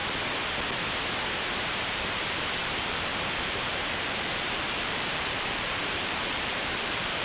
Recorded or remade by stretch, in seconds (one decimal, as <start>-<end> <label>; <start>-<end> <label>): 0.0-1.8 recorded; 1.8-7.2 remade